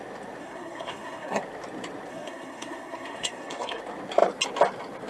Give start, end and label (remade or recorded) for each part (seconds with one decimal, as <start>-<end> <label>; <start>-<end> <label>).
0.0-0.4 recorded; 0.4-1.4 remade; 1.4-2.1 recorded; 2.1-3.8 remade; 3.8-5.1 recorded